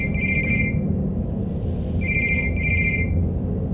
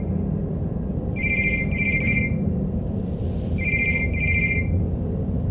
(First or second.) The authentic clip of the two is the first